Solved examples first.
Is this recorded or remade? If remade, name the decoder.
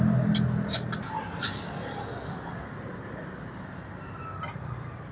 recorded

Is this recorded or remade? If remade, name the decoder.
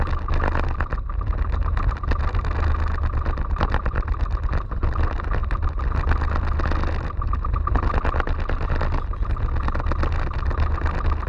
recorded